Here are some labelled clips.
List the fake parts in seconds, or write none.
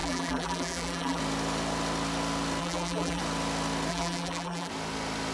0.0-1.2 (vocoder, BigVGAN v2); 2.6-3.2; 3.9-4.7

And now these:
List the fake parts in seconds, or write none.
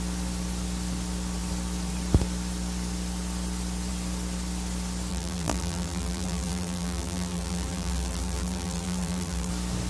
5.1-9.5 (vocoder, BigVGAN v2)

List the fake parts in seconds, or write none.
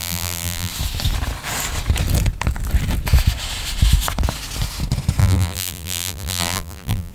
0.0-0.7 (vocoder, BigVGAN v2); 5.2-7.1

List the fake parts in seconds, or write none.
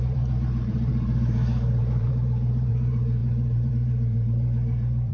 0.0-5.1 (vocoder, BigVGAN v2)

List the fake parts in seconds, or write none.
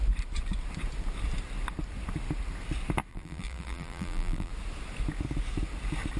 3.1-4.5 (vocoder, BigVGAN v2)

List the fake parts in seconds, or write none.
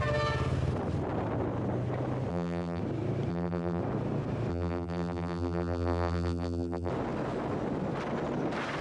2.3-2.8 (vocoder, BigVGAN v2); 3.3-3.8; 4.5-6.9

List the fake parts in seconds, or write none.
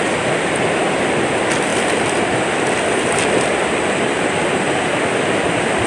none